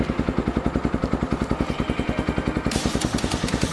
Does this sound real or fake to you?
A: real